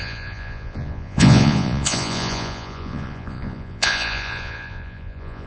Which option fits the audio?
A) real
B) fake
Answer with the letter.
B